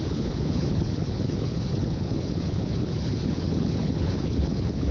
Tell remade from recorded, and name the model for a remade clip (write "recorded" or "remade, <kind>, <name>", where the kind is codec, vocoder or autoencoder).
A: remade, codec, HILCodec